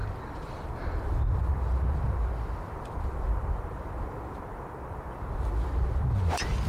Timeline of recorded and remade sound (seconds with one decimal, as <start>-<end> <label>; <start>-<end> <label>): 0.0-6.7 remade